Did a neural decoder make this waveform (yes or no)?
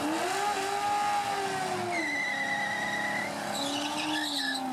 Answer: no